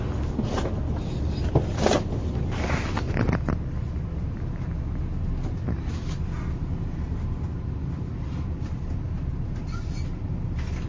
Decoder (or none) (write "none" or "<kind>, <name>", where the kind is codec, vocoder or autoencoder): none